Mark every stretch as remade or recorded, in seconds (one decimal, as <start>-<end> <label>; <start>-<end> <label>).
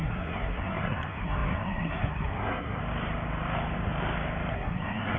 0.0-2.8 remade; 2.8-4.5 recorded; 4.5-5.2 remade